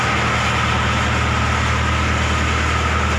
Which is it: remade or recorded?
recorded